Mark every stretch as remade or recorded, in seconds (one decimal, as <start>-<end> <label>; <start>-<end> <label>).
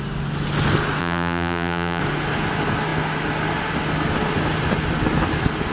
0.0-1.0 recorded; 1.0-2.0 remade; 2.0-5.7 recorded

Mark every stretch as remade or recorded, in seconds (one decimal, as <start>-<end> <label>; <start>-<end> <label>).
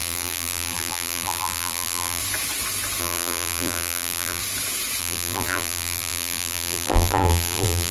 0.0-2.2 remade; 2.2-3.0 recorded; 3.0-4.4 remade; 4.4-5.0 recorded; 5.0-7.9 remade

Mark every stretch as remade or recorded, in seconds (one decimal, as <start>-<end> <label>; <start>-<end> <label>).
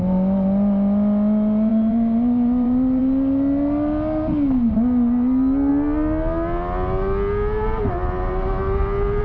0.0-1.7 recorded; 1.7-3.0 remade; 3.0-9.2 recorded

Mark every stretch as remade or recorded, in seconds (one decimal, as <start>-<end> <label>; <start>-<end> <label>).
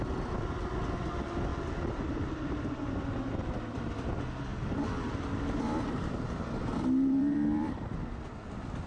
0.0-1.5 recorded; 1.5-4.1 remade; 4.1-4.5 recorded; 4.5-8.5 remade; 8.5-8.9 recorded